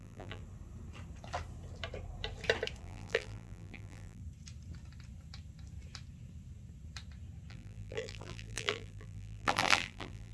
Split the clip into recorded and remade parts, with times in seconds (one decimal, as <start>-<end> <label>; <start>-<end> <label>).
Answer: 0.0-0.4 remade; 0.4-2.8 recorded; 2.8-4.2 remade; 4.2-7.5 recorded; 7.5-10.3 remade